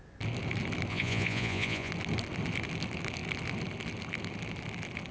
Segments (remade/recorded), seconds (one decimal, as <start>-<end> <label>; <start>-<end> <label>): 0.0-0.9 recorded; 0.9-1.9 remade; 1.9-5.1 recorded